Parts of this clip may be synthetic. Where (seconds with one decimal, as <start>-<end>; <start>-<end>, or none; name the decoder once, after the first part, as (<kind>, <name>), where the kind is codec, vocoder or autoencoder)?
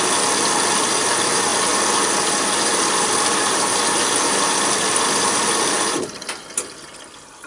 none